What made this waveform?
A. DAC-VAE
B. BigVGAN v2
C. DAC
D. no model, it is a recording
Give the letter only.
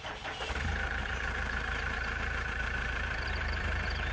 B